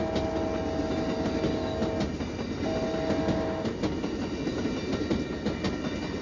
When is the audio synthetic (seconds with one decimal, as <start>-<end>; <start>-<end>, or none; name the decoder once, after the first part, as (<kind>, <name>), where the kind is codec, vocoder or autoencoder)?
none